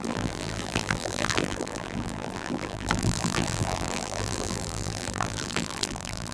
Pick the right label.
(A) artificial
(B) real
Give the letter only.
A